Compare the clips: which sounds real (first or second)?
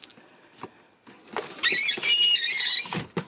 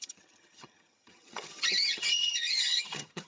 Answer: first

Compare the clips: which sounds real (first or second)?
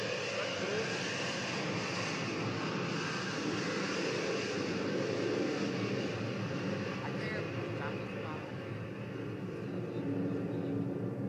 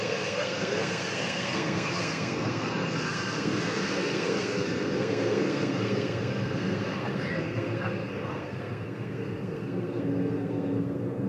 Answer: first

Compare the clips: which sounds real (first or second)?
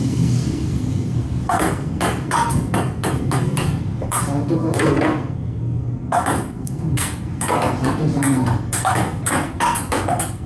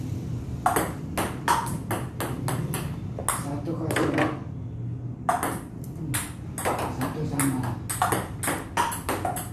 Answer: second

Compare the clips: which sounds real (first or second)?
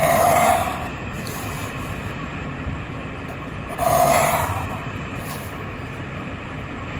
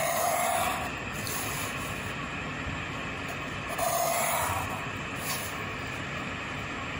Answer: second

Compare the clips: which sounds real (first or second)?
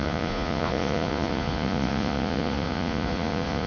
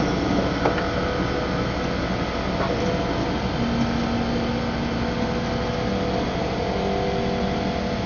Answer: second